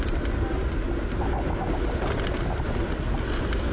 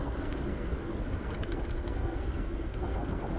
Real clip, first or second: first